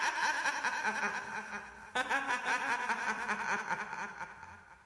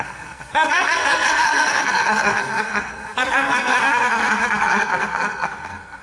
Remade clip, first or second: second